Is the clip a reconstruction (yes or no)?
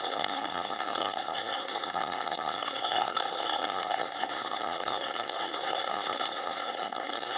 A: yes